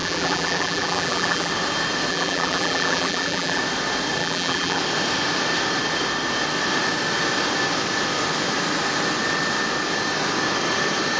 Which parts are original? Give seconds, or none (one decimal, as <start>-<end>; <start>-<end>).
1.5-2.1; 3.6-4.2; 4.8-11.2